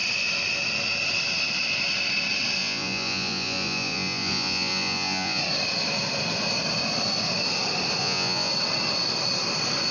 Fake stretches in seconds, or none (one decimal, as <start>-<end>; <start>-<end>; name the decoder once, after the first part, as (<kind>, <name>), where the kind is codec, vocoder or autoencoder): 2.6-5.4 (vocoder, Vocos); 8.0-8.5